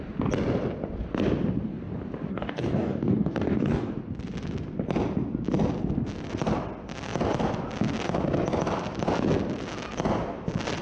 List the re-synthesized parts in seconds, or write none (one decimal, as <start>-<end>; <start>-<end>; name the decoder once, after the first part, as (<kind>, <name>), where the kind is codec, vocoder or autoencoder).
2.3-3.9 (codec, DAC)